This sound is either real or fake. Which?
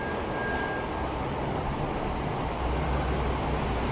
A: real